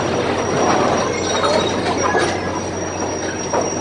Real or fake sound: real